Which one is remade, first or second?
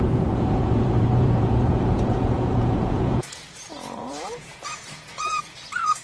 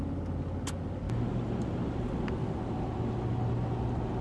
first